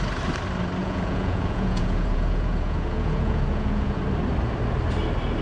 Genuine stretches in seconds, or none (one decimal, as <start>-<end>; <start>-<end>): 0.0-0.8; 4.0-5.4